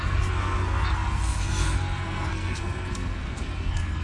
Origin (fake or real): fake